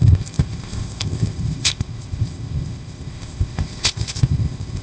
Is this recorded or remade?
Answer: remade